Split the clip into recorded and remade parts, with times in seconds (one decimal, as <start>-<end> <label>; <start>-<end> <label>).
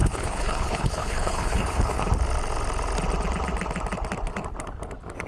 0.0-2.0 remade; 2.0-5.3 recorded